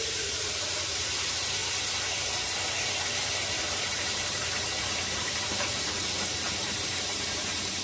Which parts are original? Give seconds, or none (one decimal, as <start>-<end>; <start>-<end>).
1.6-3.6

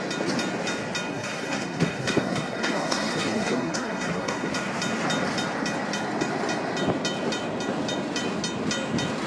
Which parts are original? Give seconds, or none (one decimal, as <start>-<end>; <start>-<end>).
0.0-1.1; 4.5-9.3

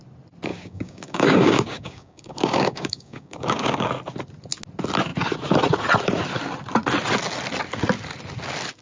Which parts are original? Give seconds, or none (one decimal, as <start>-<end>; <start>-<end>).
0.0-0.5; 3.9-8.8